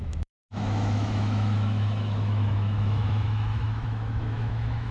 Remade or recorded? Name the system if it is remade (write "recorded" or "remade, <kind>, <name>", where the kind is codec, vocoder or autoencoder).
remade, autoencoder, DAC-VAE